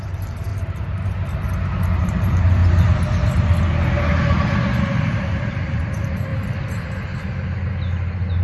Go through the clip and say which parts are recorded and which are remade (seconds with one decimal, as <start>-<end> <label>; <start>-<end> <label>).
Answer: 0.0-0.5 remade; 0.5-2.0 recorded; 2.0-2.6 remade; 2.6-5.0 recorded; 5.0-6.3 remade; 6.3-8.4 recorded